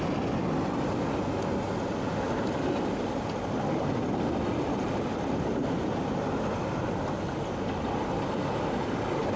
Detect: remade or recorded recorded